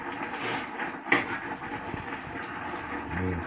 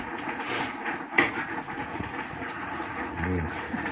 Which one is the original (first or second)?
first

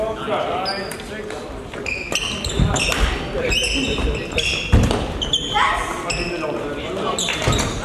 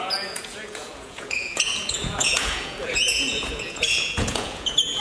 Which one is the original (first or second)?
first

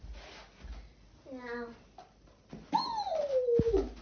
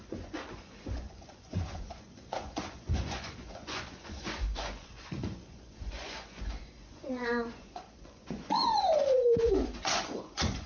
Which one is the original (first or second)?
first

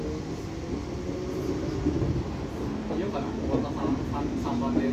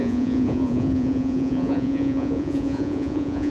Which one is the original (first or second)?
first